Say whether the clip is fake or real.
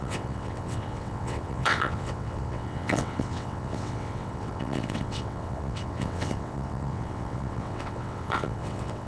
fake